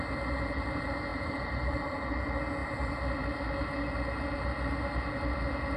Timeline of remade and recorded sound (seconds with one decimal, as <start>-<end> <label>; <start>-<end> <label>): 0.0-1.1 recorded; 1.1-2.1 remade; 2.1-5.8 recorded